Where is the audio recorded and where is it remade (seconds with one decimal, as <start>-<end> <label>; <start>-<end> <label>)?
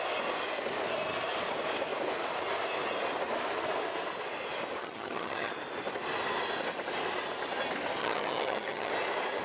0.0-4.8 recorded; 4.8-5.5 remade; 5.5-8.0 recorded; 8.0-8.9 remade; 8.9-9.4 recorded